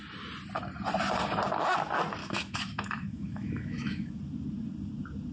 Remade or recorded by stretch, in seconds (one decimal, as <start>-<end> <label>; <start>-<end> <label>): 0.0-2.2 recorded; 2.2-4.2 remade; 4.2-5.3 recorded